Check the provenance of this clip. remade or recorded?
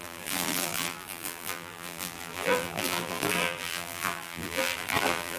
remade